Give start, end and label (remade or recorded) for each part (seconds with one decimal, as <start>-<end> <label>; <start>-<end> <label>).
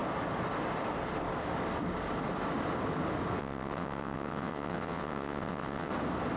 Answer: 0.0-3.4 recorded; 3.4-5.9 remade; 5.9-6.4 recorded